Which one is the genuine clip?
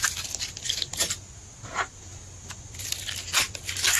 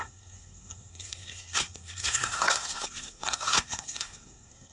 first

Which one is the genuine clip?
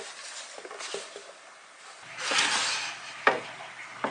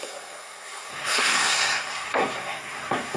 first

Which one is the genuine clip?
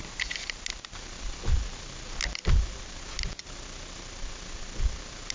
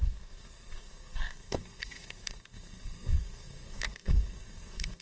first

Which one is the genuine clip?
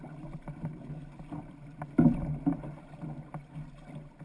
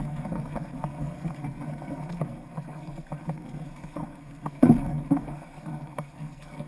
first